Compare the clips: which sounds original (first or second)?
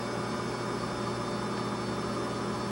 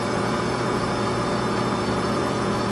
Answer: first